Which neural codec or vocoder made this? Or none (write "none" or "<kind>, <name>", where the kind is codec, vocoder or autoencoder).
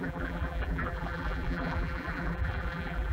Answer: vocoder, BigVGAN v2